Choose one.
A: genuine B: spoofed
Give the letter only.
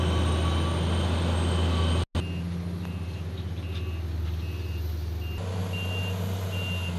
A